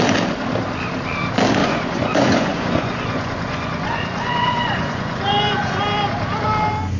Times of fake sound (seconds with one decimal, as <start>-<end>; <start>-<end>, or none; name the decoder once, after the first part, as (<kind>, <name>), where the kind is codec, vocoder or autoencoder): 1.6-5.8 (vocoder, Vocos)